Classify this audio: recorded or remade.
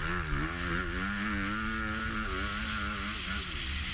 recorded